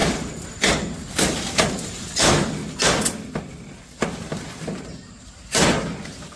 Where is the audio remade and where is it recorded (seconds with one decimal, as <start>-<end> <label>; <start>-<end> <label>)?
0.0-6.4 recorded